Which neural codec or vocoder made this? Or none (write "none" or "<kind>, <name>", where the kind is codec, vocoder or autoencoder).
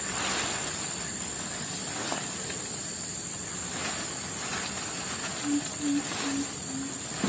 none